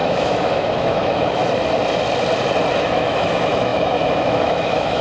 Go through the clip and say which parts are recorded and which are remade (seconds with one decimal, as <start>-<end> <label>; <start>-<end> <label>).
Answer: 0.0-1.4 remade; 1.4-2.7 recorded; 2.7-5.0 remade